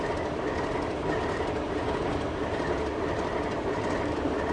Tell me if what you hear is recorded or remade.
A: recorded